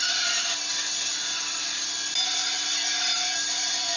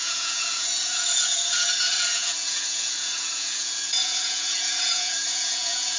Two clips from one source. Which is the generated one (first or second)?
second